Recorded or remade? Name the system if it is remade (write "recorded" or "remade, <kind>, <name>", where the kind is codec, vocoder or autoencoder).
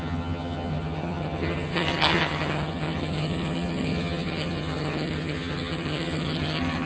remade, vocoder, HiFi-GAN